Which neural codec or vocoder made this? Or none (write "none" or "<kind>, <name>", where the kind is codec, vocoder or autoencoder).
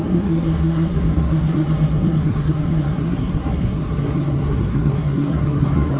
codec, SNAC